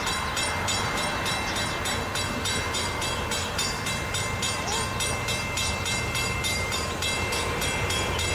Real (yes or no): no